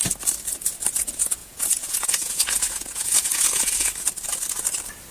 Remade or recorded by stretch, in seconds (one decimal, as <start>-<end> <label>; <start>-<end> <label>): 0.0-1.4 recorded; 1.4-3.9 remade; 3.9-5.1 recorded